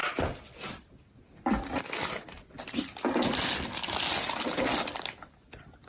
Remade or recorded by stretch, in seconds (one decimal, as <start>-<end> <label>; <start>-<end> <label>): 0.0-5.9 recorded